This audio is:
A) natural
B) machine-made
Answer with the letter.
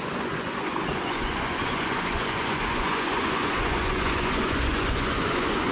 B